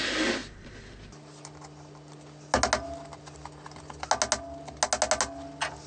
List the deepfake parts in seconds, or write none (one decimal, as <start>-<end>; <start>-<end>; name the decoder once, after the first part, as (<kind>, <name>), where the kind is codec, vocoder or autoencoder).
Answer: none